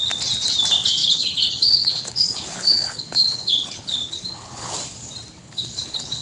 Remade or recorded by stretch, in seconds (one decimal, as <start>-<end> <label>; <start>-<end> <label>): 0.0-1.0 recorded; 1.0-4.7 remade; 4.7-5.4 recorded; 5.4-6.2 remade

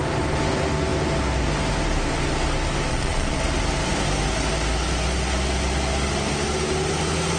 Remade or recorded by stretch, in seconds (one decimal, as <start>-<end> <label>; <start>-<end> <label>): 0.0-2.9 recorded; 2.9-3.4 remade; 3.4-7.4 recorded

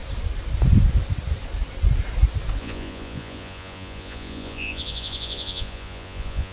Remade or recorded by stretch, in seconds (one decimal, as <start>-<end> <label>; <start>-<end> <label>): 0.0-2.6 recorded; 2.6-6.5 remade

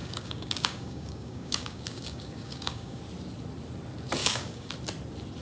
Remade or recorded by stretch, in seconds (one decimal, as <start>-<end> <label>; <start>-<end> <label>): 0.0-3.0 remade; 3.0-4.2 recorded; 4.2-4.7 remade; 4.7-5.4 recorded